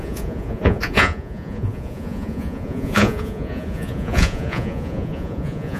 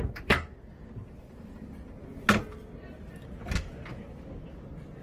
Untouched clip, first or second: second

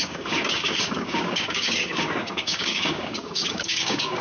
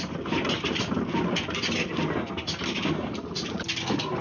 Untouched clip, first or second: second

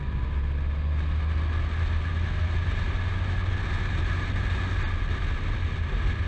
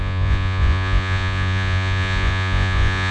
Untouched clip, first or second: first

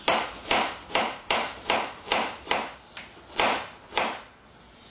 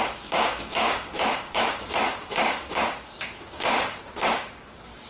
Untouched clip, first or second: first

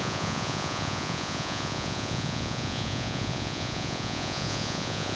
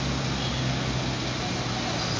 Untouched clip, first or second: second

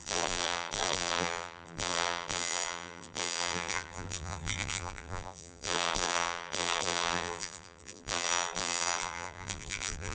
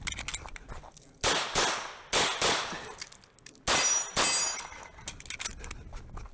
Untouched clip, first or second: second